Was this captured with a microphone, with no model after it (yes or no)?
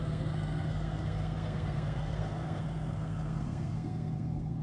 no